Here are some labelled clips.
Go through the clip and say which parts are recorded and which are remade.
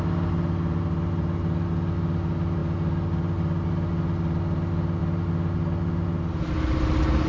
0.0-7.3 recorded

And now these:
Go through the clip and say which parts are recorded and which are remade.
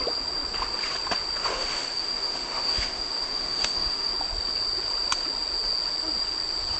0.0-1.4 recorded; 1.4-4.1 remade; 4.1-6.8 recorded